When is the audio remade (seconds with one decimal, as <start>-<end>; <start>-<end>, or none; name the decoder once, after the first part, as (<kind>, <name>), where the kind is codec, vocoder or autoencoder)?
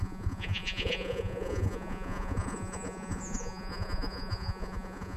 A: 0.0-5.2 (vocoder, Vocos)